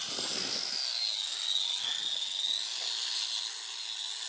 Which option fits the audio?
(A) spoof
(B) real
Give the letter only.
B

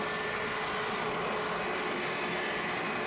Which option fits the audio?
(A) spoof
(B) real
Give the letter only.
B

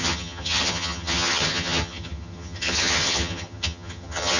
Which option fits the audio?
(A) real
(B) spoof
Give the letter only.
B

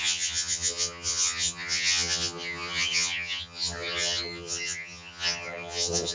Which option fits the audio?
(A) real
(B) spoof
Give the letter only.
B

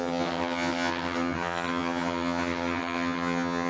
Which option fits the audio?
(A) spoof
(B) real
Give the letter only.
A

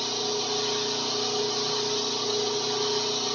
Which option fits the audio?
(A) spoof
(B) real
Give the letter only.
B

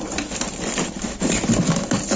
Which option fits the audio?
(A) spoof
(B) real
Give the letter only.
B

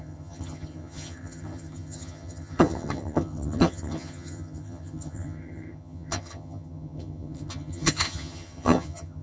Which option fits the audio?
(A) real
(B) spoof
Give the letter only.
B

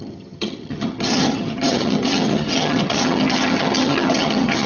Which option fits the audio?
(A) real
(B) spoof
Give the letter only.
B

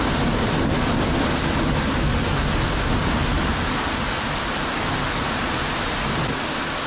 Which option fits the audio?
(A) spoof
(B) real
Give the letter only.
B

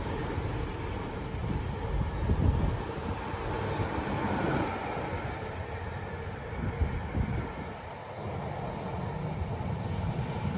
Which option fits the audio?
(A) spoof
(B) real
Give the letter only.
B